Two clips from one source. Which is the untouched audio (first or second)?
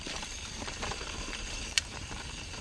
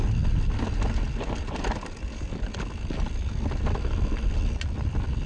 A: second